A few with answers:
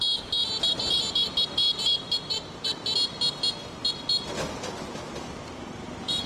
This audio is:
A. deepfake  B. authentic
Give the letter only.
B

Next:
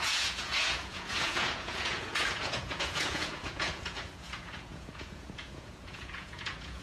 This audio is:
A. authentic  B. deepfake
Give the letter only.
B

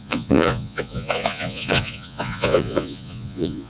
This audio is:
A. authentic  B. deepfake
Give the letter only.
B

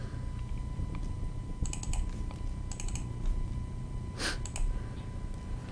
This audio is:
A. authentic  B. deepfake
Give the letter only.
A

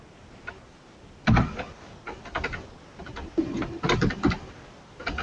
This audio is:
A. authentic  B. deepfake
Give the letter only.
A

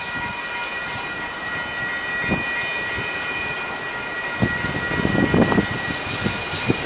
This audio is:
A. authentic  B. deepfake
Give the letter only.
A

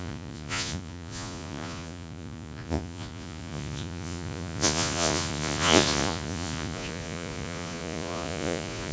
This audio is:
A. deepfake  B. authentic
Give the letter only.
A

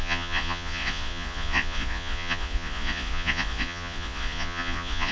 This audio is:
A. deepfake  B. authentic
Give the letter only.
A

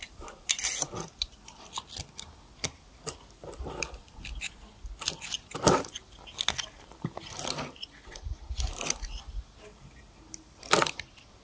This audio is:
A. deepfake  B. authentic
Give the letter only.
B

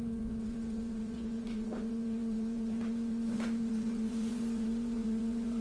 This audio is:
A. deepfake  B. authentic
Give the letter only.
A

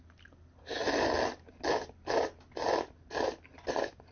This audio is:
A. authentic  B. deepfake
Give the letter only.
A